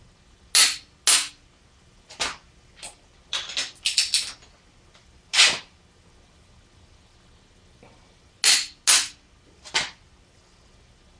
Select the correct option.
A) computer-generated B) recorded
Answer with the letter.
B